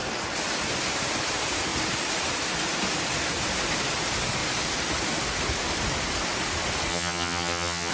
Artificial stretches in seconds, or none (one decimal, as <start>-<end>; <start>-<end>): 6.9-7.9